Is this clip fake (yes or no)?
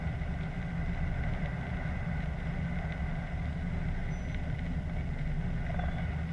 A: no